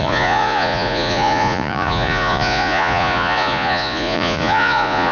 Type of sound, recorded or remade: remade